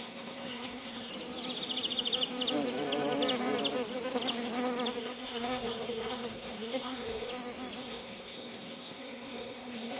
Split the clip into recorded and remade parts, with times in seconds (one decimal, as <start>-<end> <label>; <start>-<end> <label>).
0.0-1.1 remade; 1.1-5.0 recorded; 5.0-7.3 remade; 7.3-7.8 recorded; 7.8-10.0 remade